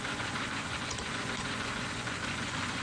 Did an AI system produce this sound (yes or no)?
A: yes